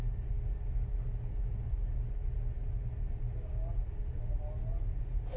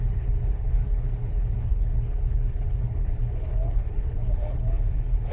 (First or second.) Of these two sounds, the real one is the first